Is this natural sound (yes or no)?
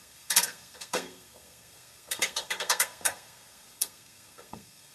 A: no